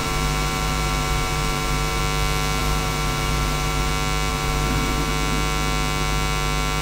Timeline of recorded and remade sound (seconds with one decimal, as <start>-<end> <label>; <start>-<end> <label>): 0.0-2.0 remade; 2.0-2.6 recorded; 2.6-3.9 remade; 3.9-4.3 recorded; 4.3-5.1 remade; 5.1-6.8 recorded